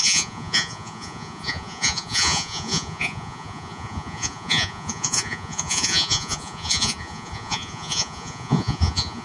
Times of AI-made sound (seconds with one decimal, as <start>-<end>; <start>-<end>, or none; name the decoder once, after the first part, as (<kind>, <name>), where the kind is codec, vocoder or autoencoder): 0.0-9.2 (vocoder, Vocos)